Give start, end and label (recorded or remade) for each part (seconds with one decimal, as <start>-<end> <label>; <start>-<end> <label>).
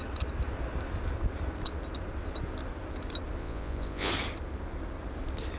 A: 0.0-3.4 recorded; 3.4-4.1 remade; 4.1-5.6 recorded